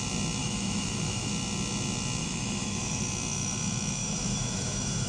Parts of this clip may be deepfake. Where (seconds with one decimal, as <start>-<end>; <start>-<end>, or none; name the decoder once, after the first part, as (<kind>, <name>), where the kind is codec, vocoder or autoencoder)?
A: 0.4-1.3 (autoencoder, DAC-VAE); 2.2-3.0; 4.0-5.1